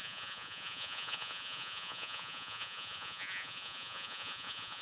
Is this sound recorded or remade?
remade